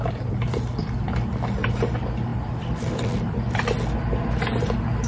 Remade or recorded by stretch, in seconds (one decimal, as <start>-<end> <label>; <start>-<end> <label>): 0.0-5.1 recorded